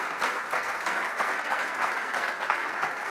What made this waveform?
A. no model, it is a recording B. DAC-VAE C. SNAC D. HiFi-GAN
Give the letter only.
C